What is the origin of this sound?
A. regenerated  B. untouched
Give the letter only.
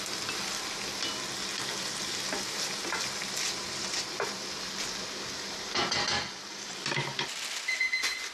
B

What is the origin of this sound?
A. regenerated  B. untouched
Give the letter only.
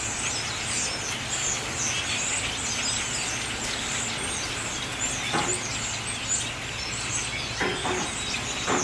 B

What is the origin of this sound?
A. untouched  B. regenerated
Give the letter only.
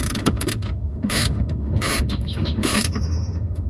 B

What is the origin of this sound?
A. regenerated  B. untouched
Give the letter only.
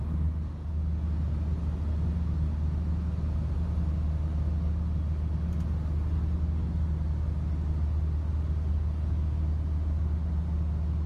B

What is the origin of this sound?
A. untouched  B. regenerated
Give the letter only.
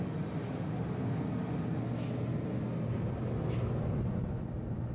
A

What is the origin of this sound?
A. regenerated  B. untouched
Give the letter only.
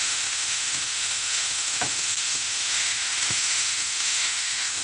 A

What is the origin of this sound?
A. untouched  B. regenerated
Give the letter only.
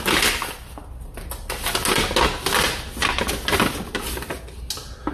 A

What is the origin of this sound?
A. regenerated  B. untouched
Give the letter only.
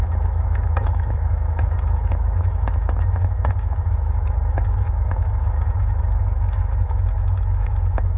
A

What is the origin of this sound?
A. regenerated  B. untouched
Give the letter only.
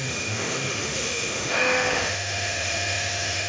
A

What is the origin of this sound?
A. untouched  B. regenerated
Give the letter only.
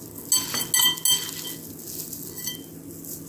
A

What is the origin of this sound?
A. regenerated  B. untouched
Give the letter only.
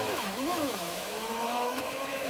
A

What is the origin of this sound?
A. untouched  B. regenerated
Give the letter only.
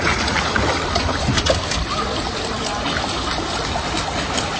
A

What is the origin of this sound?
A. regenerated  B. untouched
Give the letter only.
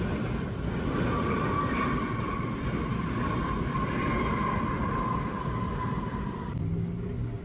B